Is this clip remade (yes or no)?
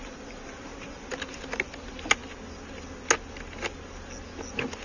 no